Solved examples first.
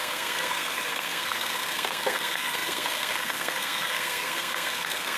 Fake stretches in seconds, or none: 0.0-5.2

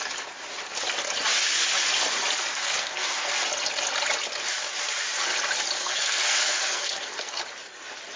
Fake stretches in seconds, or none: 2.5-3.3; 5.8-7.4

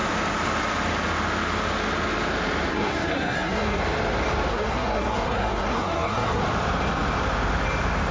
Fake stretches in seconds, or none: 2.7-3.8; 4.5-6.4

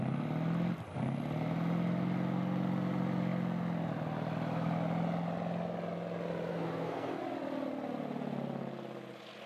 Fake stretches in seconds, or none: 6.5-7.2

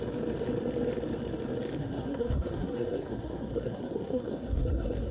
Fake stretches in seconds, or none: 1.8-5.1

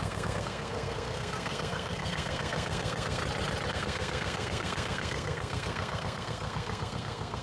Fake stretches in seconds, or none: 0.0-3.2; 3.7-7.4

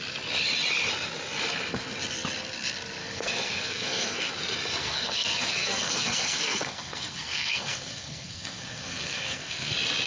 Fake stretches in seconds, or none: 3.0-4.3; 4.8-9.7